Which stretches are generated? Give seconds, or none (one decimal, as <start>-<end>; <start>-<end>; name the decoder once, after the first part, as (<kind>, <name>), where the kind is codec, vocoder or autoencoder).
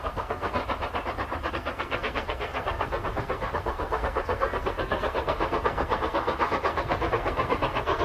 0.0-0.6 (codec, SNAC); 1.5-8.0